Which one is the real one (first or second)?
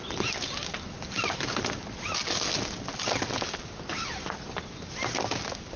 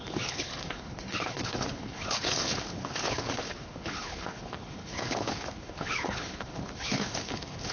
first